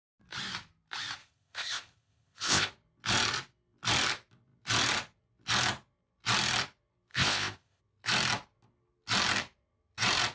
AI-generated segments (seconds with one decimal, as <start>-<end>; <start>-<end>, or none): 1.2-2.7; 7.1-7.8